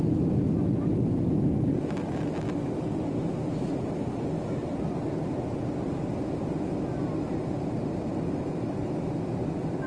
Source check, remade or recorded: recorded